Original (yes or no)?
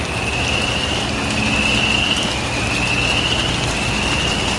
yes